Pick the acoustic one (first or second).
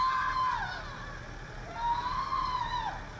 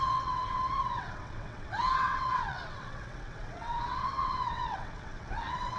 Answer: first